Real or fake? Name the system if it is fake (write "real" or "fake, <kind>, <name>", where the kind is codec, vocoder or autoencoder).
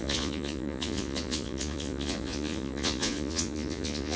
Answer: fake, vocoder, Vocos